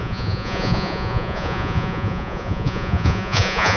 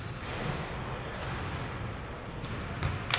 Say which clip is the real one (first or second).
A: second